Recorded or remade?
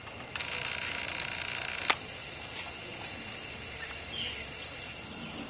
recorded